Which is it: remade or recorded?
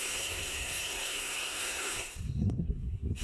remade